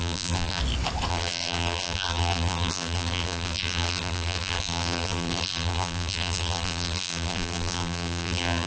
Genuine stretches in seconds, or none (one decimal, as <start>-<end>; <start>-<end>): 0.6-1.1